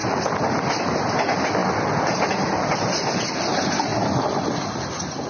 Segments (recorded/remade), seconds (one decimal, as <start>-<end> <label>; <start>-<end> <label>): 0.0-5.3 recorded